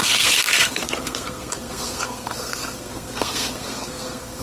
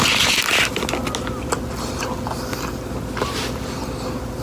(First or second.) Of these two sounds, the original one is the second